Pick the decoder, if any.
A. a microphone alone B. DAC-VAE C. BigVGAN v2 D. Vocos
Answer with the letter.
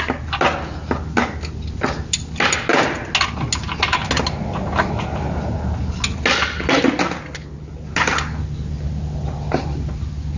A